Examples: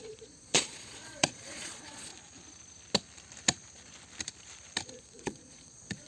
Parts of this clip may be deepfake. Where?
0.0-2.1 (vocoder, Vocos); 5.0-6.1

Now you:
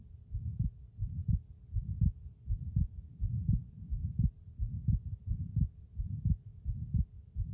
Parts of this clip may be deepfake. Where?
none